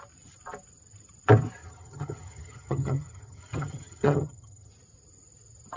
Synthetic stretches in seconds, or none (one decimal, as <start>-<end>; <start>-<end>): 1.6-4.7